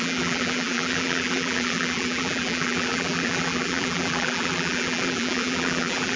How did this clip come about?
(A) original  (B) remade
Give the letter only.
B